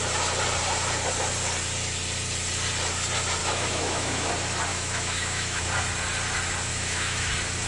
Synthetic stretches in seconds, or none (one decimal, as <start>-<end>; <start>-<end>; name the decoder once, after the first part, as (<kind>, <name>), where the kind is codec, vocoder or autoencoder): 3.4-4.3 (autoencoder, DAC-VAE); 4.7-5.6; 6.7-7.3